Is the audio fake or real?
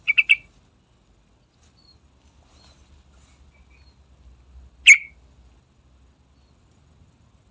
real